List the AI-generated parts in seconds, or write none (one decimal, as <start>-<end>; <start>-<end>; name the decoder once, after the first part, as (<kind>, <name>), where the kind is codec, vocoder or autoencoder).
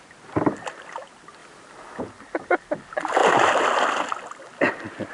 none